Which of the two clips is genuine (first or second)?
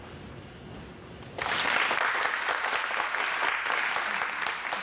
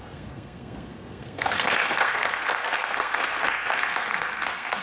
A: first